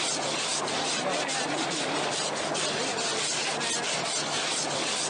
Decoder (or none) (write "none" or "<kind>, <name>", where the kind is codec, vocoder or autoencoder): none